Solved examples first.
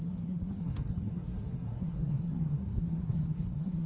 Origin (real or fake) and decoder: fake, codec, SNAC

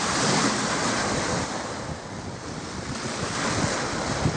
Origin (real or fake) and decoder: real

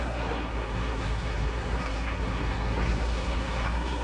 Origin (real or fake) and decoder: fake, codec, SNAC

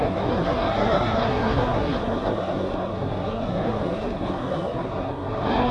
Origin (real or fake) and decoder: fake, codec, SNAC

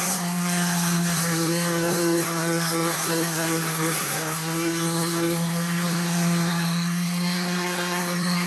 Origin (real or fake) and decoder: fake, codec, SNAC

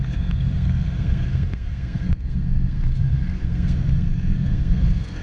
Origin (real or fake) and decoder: fake, codec, SNAC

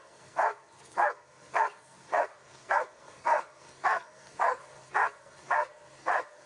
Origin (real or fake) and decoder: fake, codec, SNAC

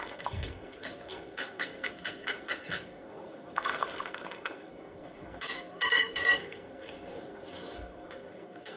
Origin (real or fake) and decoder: fake, codec, SNAC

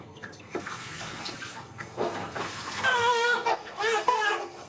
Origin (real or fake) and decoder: fake, codec, SNAC